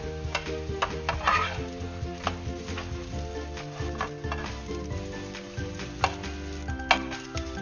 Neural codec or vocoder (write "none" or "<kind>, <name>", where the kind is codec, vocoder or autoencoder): none